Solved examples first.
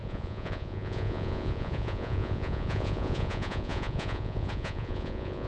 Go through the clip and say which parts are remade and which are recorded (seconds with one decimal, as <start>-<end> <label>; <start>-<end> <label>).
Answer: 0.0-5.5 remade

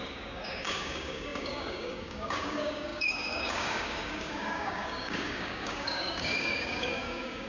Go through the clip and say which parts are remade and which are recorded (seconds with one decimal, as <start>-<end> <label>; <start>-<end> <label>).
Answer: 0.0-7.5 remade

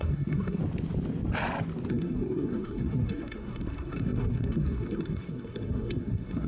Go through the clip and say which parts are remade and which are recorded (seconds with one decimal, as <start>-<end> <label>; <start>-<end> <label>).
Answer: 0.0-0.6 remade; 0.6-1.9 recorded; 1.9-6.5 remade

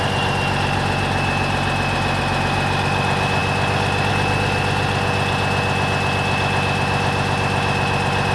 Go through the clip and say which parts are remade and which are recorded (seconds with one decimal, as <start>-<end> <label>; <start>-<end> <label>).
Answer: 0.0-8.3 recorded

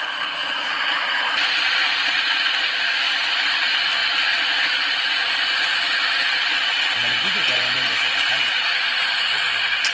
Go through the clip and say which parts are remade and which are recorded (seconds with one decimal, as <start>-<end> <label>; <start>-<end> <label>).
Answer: 0.0-9.9 recorded

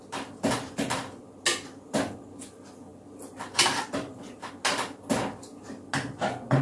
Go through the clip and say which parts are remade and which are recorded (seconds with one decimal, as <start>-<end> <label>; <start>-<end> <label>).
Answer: 0.0-0.8 remade; 0.8-2.9 recorded; 2.9-4.5 remade; 4.5-6.6 recorded

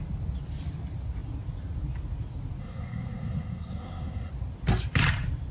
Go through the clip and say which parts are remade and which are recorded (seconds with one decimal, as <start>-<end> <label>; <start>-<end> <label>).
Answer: 0.0-2.6 recorded; 2.6-4.3 remade; 4.3-5.5 recorded

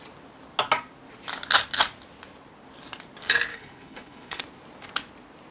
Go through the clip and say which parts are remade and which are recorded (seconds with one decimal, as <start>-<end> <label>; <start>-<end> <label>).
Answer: 0.0-3.5 recorded; 3.5-4.4 remade; 4.4-5.5 recorded